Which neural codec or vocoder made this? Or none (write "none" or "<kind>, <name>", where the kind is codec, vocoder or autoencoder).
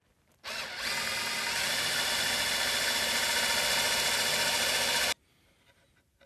none